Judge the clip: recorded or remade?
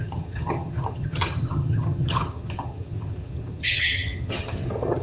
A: remade